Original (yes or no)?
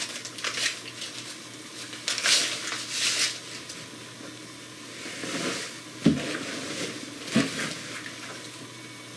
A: yes